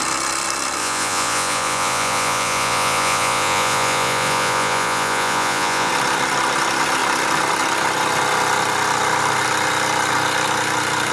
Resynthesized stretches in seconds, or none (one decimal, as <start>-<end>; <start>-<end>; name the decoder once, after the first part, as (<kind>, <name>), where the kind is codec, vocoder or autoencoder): 0.8-5.9 (vocoder, Vocos)